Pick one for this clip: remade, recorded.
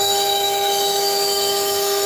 remade